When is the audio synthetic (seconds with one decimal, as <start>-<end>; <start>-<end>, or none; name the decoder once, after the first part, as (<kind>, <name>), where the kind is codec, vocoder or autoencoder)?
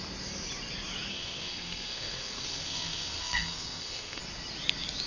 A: 1.1-4.2 (codec, SNAC)